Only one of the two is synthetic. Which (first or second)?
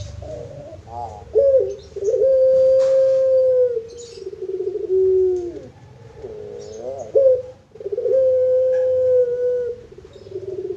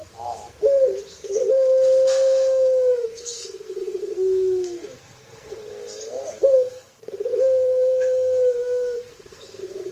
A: second